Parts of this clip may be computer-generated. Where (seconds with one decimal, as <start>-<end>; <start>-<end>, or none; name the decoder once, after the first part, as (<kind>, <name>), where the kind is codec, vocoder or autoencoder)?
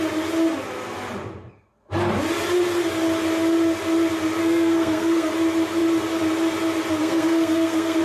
4.4-5.3 (codec, SNAC); 7.0-8.0